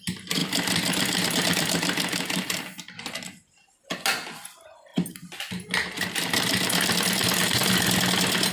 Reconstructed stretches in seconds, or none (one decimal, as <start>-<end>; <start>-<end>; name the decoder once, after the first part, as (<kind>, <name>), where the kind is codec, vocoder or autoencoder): none